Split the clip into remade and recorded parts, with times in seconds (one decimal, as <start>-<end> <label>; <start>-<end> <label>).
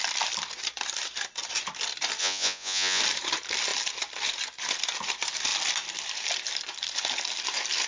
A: 0.0-2.2 recorded; 2.2-3.0 remade; 3.0-7.9 recorded